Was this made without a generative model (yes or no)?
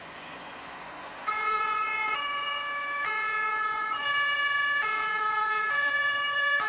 no